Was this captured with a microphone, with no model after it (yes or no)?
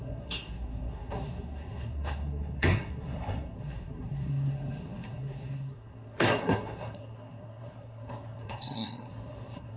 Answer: no